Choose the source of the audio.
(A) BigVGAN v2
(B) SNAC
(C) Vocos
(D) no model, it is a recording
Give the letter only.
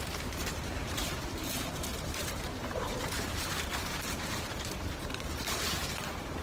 A